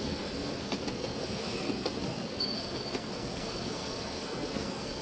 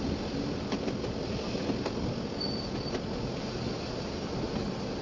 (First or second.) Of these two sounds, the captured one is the second